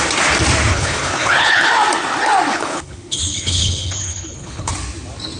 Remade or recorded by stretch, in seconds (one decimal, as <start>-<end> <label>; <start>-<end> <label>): 0.0-0.7 recorded; 0.7-1.7 remade; 1.7-2.5 recorded; 2.5-4.7 remade; 4.7-5.4 recorded